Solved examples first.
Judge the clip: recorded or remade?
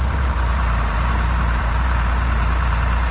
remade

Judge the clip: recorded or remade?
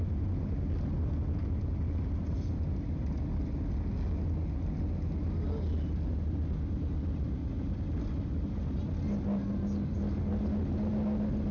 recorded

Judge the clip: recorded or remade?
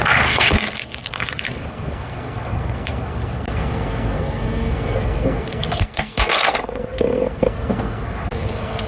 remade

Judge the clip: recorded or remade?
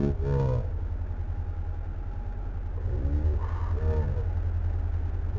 recorded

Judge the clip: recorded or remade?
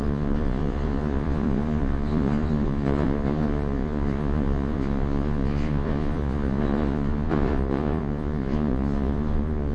remade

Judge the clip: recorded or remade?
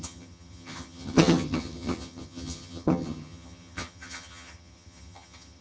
remade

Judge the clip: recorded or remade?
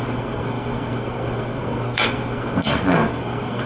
remade